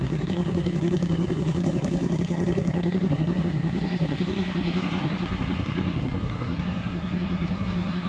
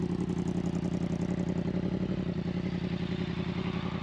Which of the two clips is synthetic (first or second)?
first